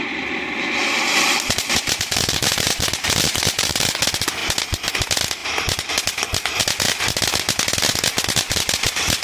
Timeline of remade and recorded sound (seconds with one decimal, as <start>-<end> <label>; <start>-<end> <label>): 0.0-0.8 recorded; 0.8-4.0 remade; 4.0-9.2 recorded